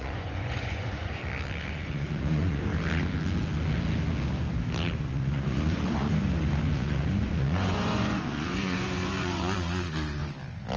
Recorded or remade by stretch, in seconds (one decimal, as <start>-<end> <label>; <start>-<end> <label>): 0.0-1.2 remade; 1.2-1.7 recorded; 1.7-2.7 remade; 2.7-5.1 recorded; 5.1-6.1 remade; 6.1-6.7 recorded; 6.7-10.2 remade; 10.2-10.8 recorded